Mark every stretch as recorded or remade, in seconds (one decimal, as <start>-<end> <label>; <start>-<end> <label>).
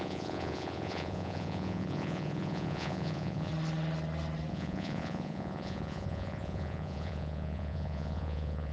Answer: 0.0-3.5 remade; 3.5-4.5 recorded; 4.5-8.7 remade